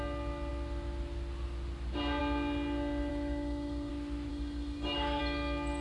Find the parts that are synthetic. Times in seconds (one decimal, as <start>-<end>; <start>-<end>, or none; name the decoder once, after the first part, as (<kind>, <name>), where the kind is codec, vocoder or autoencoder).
3.1-3.9 (autoencoder, DAC-VAE); 4.3-5.2